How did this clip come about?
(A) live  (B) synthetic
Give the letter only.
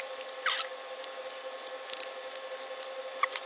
A